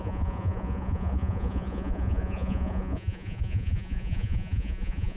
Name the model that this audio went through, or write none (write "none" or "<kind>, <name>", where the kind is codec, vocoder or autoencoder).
vocoder, Vocos